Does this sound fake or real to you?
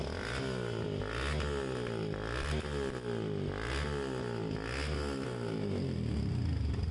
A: real